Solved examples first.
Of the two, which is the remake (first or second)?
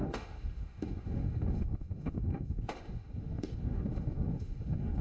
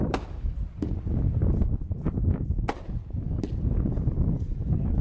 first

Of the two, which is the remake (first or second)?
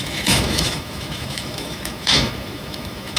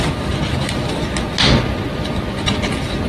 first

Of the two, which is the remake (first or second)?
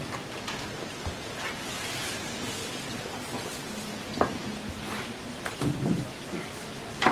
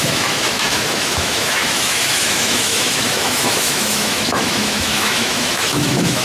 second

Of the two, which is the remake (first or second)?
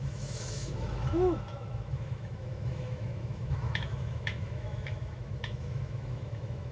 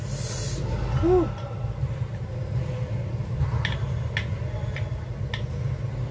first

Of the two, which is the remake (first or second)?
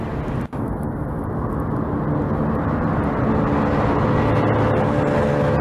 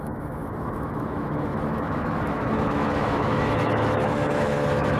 second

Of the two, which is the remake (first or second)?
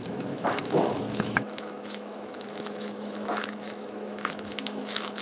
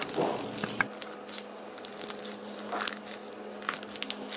first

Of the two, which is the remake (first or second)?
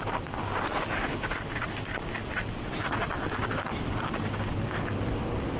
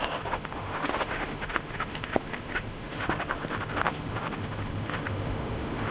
second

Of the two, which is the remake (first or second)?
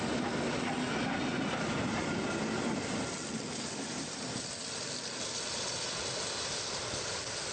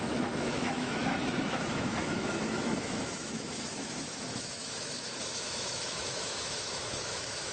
second